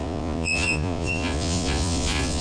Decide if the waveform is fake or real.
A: fake